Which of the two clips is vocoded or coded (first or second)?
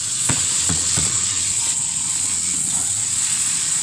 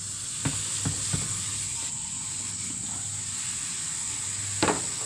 first